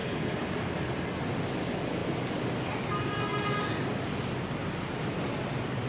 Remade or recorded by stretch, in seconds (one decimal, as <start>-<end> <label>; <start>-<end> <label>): 0.0-0.5 remade; 0.5-5.9 recorded